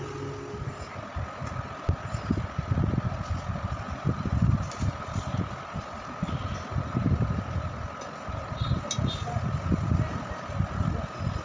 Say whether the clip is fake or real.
real